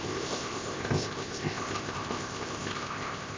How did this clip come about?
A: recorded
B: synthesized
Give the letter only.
B